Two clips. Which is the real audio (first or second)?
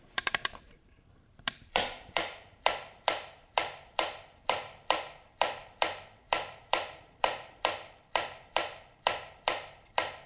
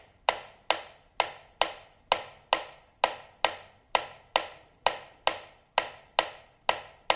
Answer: second